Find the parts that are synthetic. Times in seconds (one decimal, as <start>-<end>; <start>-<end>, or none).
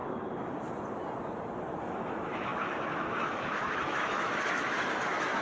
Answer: 1.8-5.4